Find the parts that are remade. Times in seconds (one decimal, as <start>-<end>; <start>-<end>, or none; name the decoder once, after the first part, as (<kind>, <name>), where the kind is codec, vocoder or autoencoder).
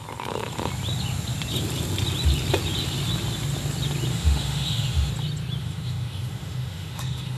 4.1-5.1 (autoencoder, DAC-VAE); 5.6-7.4